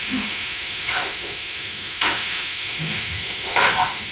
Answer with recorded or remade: remade